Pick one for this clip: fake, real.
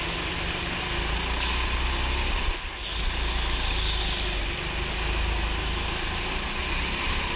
real